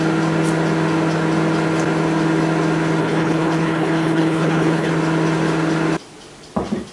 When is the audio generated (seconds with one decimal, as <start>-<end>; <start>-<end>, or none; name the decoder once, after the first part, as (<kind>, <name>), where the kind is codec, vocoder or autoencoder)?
3.0-4.9 (codec, HILCodec)